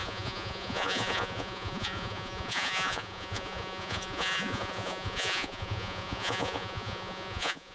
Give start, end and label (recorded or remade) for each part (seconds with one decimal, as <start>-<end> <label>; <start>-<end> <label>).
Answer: 0.0-7.7 remade